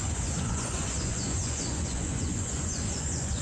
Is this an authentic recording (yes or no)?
no